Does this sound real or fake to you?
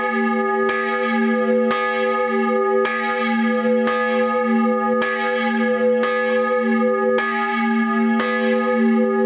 real